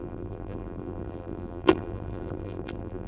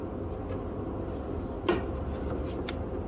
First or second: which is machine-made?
first